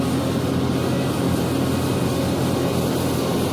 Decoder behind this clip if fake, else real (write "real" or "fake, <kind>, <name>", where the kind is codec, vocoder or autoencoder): real